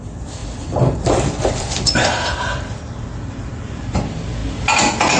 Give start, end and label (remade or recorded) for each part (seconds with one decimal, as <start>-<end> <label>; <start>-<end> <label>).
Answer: 0.0-4.4 remade; 4.4-5.2 recorded